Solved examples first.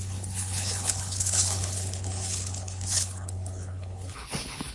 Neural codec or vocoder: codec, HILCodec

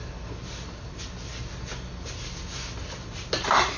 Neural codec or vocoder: none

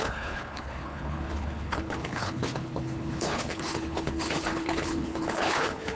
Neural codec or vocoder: codec, HILCodec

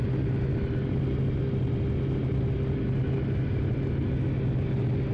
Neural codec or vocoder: none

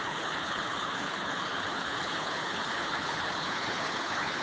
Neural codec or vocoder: codec, HILCodec